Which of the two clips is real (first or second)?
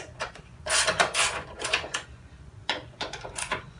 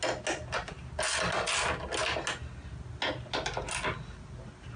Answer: second